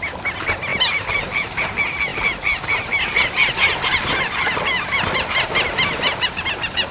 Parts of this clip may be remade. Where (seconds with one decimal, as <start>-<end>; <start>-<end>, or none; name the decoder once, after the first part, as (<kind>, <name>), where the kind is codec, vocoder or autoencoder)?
none